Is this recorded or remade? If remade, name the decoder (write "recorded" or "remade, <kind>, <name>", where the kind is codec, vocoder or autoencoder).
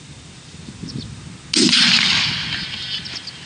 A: recorded